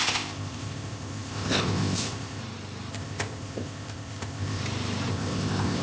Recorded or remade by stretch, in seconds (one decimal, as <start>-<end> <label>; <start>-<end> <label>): 0.0-2.4 remade; 2.4-2.9 recorded; 2.9-4.6 remade; 4.6-5.1 recorded; 5.1-5.8 remade